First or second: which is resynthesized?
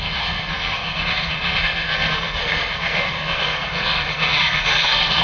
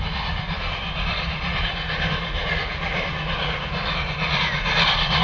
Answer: first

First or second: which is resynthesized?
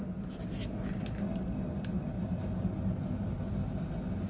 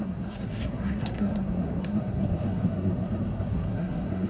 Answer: second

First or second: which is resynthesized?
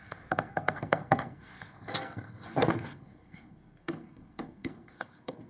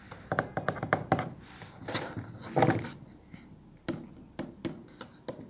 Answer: first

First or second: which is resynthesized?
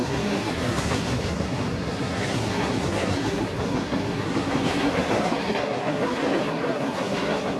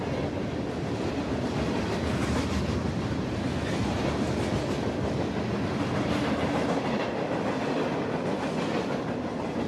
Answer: first